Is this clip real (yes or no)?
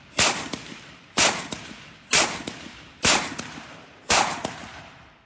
no